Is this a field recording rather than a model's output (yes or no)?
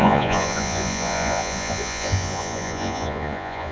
no